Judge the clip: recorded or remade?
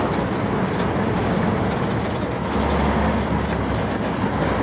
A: recorded